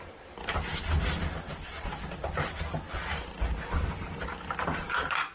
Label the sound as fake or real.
real